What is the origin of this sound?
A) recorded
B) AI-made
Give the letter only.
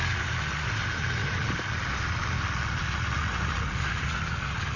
A